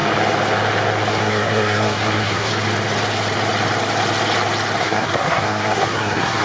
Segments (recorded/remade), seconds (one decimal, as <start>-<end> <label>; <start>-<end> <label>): 0.0-1.1 recorded; 1.1-2.5 remade; 2.5-4.8 recorded; 4.8-6.4 remade